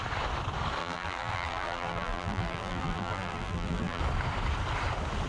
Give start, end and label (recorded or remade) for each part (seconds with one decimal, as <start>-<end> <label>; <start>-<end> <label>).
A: 0.0-0.8 recorded; 0.8-4.0 remade; 4.0-5.3 recorded